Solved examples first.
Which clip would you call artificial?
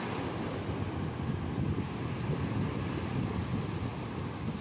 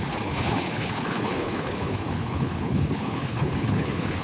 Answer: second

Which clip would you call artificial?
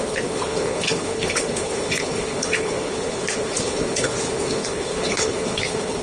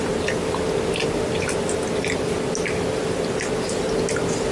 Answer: first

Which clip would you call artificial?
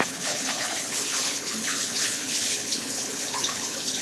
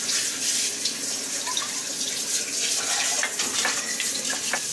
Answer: first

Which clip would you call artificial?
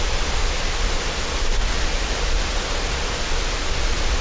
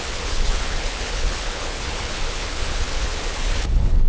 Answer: second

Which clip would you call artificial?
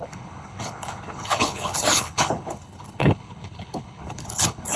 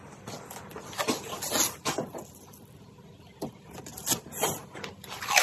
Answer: first